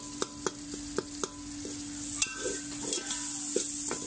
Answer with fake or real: real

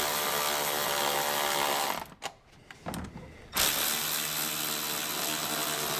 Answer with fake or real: real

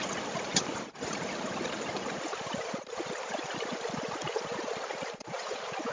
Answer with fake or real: fake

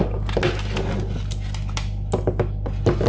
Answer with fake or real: real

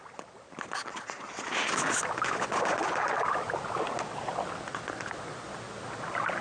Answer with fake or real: real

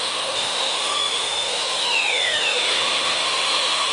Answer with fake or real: fake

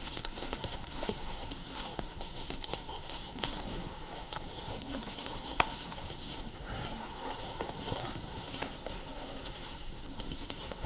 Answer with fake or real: fake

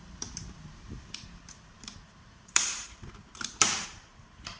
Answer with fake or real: fake